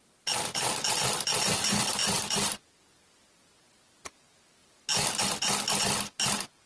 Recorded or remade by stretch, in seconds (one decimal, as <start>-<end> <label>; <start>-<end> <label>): 0.0-2.0 recorded; 2.0-2.5 remade; 2.5-6.7 recorded